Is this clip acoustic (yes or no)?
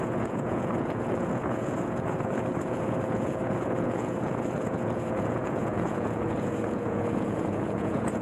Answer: no